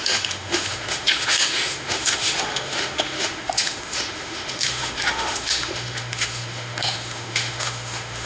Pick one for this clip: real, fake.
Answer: fake